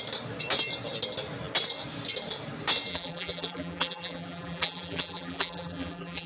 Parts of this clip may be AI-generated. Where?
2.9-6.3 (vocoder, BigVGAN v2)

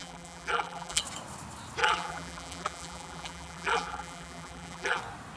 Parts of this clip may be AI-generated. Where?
0.0-1.0 (vocoder, BigVGAN v2); 1.8-5.0

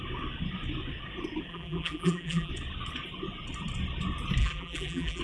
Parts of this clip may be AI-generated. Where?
1.5-2.5 (vocoder, BigVGAN v2); 4.4-5.2

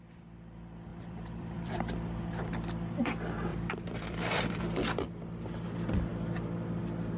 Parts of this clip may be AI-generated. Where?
0.9-1.7 (vocoder, BigVGAN v2); 3.5-4.6

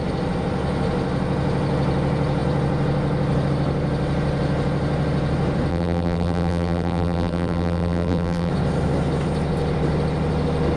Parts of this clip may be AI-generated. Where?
5.7-8.5 (vocoder, BigVGAN v2)

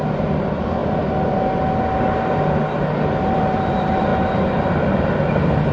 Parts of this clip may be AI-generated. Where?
0.0-0.8 (vocoder, BigVGAN v2); 2.4-4.1; 5.0-5.7